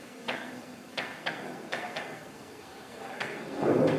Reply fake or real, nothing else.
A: fake